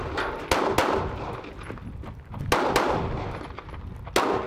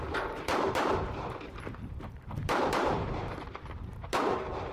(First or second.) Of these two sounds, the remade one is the second